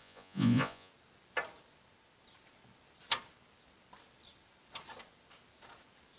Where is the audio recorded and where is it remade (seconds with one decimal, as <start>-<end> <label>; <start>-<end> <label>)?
0.0-0.9 remade; 0.9-6.2 recorded

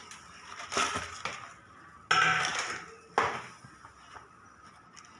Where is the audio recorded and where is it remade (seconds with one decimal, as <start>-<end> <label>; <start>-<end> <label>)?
0.0-5.2 recorded

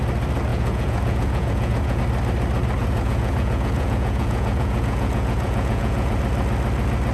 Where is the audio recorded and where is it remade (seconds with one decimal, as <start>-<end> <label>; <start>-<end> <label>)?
0.0-0.5 recorded; 0.5-2.0 remade; 2.0-2.8 recorded; 2.8-6.2 remade; 6.2-7.1 recorded

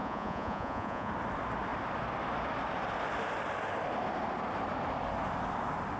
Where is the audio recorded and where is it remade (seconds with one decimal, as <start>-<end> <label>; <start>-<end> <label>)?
0.0-1.1 remade; 1.1-6.0 recorded

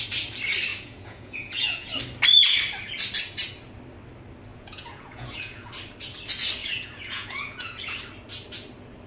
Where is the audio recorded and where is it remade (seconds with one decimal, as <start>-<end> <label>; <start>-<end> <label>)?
0.0-0.7 recorded; 0.7-2.0 remade; 2.0-4.5 recorded; 4.5-5.7 remade; 5.7-6.6 recorded; 6.6-8.0 remade; 8.0-9.1 recorded

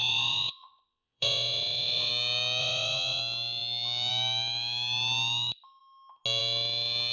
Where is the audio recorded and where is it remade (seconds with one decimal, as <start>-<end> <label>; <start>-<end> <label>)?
0.0-2.1 remade; 2.1-2.6 recorded; 2.6-3.2 remade; 3.2-7.1 recorded

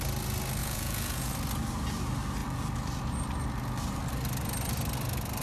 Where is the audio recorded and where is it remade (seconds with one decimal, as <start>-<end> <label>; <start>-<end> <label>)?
0.0-0.6 recorded; 0.6-1.3 remade; 1.3-5.4 recorded

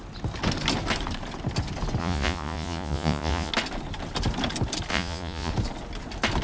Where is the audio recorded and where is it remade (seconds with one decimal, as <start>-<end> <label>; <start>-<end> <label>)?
0.0-2.0 recorded; 2.0-3.5 remade; 3.5-4.9 recorded; 4.9-5.5 remade; 5.5-6.4 recorded